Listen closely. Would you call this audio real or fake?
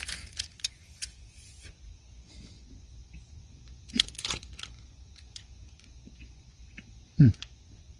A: fake